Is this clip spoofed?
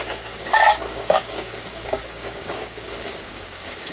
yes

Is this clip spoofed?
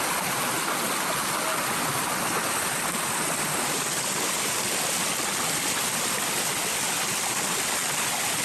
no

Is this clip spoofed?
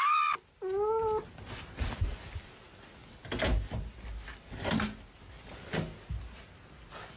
no